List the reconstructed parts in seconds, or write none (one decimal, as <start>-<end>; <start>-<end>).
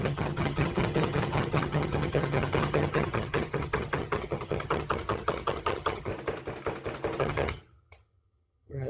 0.0-6.1; 7.2-8.9